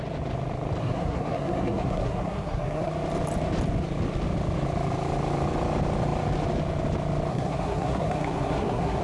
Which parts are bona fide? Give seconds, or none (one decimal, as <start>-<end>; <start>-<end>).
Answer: 0.0-0.8; 2.9-7.3